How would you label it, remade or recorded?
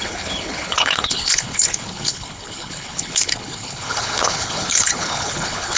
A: remade